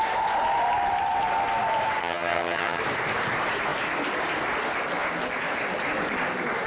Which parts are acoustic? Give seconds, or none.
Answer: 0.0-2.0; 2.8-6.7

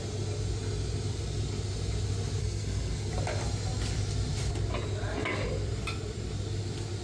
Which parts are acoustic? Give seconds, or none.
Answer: 0.0-2.4; 3.1-7.0

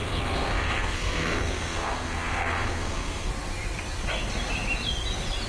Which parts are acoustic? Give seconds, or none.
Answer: 3.3-5.5